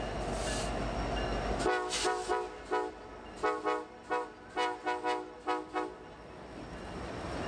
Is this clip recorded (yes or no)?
yes